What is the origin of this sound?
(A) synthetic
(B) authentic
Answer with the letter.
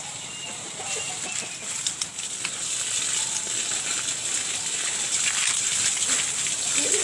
B